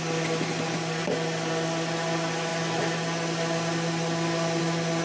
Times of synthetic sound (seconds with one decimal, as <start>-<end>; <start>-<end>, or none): none